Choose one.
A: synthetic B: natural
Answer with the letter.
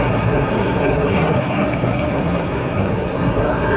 A